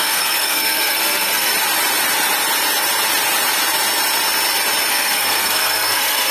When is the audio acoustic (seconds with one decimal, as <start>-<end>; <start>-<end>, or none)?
1.5-4.9